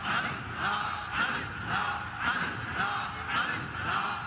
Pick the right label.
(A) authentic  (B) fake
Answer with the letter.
A